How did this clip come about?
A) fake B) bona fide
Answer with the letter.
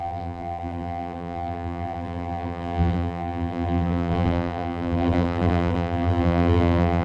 A